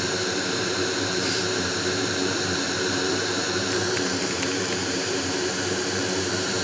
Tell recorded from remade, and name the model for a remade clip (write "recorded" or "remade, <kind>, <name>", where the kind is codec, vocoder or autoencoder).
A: remade, vocoder, BigVGAN v2